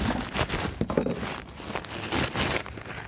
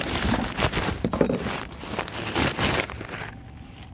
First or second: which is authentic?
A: first